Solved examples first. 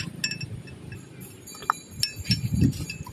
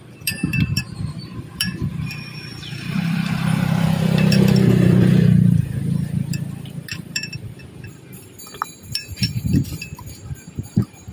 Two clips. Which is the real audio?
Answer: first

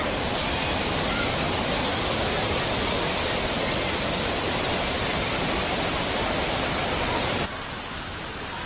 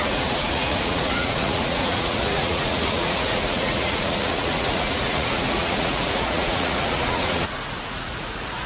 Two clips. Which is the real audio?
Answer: first